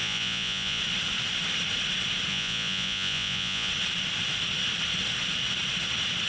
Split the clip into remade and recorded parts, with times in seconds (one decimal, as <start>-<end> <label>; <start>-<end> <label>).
0.0-0.8 remade; 0.8-2.3 recorded; 2.3-3.7 remade; 3.7-6.3 recorded